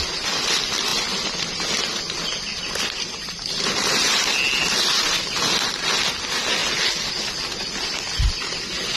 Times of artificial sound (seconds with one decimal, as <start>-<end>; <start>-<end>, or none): none